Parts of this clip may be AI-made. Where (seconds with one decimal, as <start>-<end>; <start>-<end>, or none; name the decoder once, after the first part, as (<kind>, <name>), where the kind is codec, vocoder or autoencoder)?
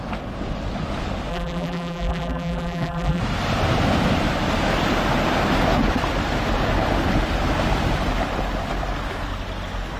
1.3-3.2 (vocoder, BigVGAN v2)